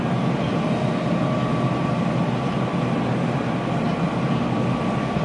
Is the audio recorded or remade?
recorded